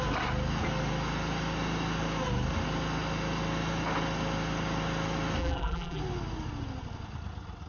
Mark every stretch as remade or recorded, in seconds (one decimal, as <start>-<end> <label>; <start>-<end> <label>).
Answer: 0.0-5.4 recorded; 5.4-6.0 remade; 6.0-7.7 recorded